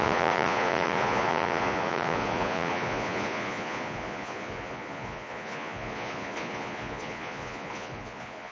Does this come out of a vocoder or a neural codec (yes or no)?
yes